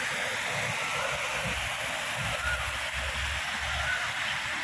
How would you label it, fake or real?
real